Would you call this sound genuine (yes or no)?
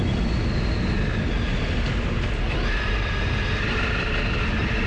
yes